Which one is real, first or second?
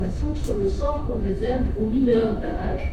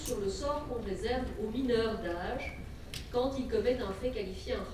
second